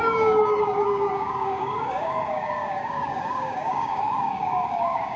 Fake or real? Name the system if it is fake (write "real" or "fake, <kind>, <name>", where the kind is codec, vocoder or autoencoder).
fake, codec, DAC